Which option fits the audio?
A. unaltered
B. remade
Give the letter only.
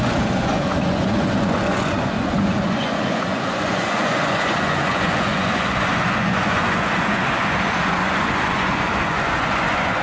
B